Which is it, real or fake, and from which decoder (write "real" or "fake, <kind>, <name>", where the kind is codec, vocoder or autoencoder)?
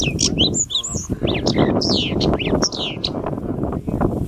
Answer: real